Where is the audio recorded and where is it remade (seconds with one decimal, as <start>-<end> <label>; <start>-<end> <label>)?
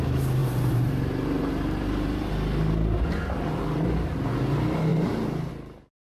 0.0-0.4 recorded; 0.4-2.3 remade; 2.3-4.9 recorded; 4.9-5.5 remade; 5.5-6.2 recorded